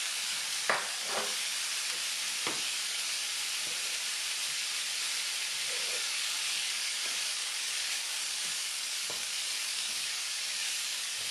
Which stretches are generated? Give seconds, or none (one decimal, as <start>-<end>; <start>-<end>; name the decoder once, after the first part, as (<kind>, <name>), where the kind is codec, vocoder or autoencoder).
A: 0.0-1.5 (codec, DAC); 2.6-3.3; 5.9-11.3